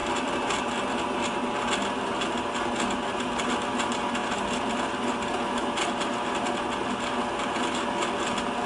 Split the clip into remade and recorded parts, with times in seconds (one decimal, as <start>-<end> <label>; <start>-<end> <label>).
0.0-0.6 remade; 0.6-8.7 recorded